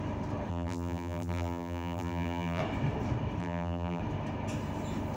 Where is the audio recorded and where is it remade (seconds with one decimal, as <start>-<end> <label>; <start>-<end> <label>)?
0.0-0.5 recorded; 0.5-2.6 remade; 2.6-3.4 recorded; 3.4-4.0 remade; 4.0-5.2 recorded